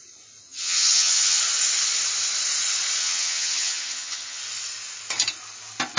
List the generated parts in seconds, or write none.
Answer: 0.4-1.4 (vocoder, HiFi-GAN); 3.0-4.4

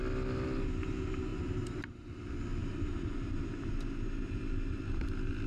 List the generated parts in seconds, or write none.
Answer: 1.3-2.2 (vocoder, BigVGAN v2); 2.6-3.7

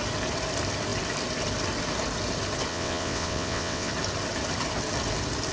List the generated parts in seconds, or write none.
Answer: 2.7-3.9 (vocoder, WaveNeXt)

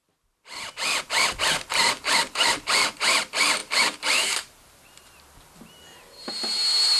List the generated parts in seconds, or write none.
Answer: 1.7-3.2 (vocoder, BigVGAN v2); 3.6-6.3

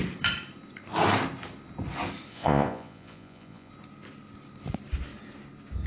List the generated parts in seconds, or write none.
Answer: 2.3-3.7 (vocoder, Vocos)

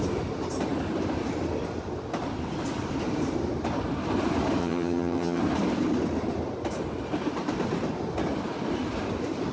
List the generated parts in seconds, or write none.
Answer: 4.6-5.4 (vocoder, HiFi-GAN)

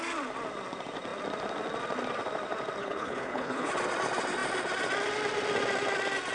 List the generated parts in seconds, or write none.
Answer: 2.8-3.7 (codec, HILCodec)